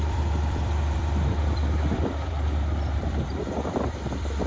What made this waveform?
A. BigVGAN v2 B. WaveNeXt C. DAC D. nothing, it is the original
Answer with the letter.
A